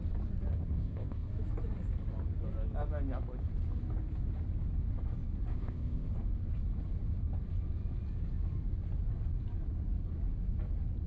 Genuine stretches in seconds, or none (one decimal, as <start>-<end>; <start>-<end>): 0.0-0.5; 1.3-5.5; 6.1-11.1